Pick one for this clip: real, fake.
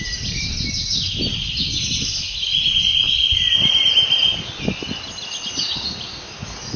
real